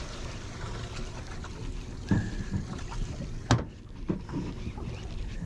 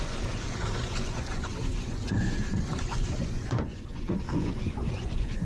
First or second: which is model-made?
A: second